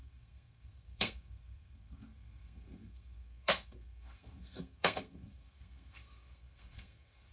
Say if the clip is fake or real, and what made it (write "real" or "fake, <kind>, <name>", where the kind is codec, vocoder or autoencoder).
fake, codec, SNAC